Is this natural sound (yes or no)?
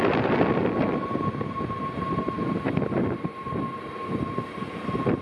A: yes